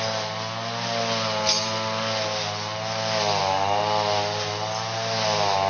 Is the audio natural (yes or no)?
yes